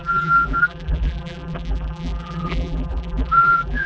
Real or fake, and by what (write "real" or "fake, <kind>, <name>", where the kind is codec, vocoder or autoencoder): fake, vocoder, BigVGAN v2